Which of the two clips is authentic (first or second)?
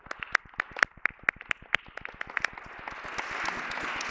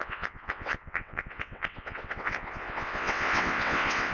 first